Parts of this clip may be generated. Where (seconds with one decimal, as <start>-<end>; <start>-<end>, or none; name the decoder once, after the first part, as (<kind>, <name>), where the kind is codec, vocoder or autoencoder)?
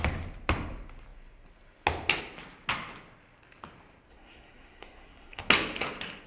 4.1-5.4 (codec, SNAC)